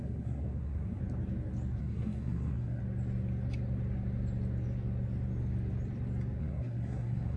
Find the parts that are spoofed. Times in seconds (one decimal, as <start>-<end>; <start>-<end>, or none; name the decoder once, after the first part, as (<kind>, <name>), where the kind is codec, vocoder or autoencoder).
0.0-1.0 (codec, SNAC); 1.8-2.8; 6.4-7.4